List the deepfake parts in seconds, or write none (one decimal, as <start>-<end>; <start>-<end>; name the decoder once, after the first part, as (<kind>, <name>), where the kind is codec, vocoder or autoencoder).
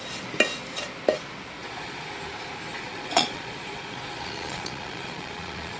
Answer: 1.6-2.1 (vocoder, Vocos); 2.7-5.8